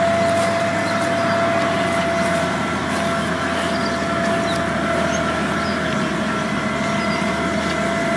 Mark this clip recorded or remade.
recorded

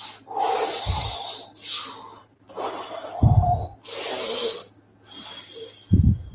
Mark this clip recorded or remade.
recorded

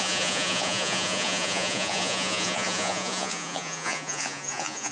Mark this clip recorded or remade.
remade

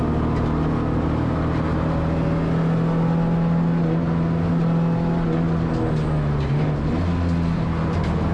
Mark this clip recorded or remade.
recorded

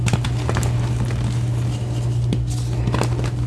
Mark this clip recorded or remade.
recorded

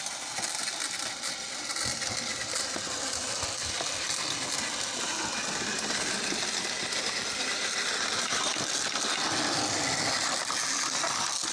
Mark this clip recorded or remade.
remade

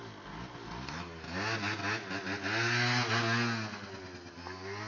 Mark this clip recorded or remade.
recorded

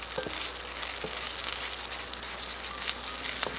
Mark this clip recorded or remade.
recorded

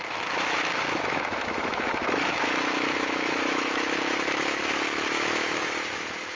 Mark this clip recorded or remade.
remade